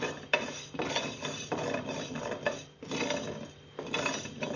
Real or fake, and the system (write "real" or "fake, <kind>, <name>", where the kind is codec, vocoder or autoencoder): fake, vocoder, BigVGAN v2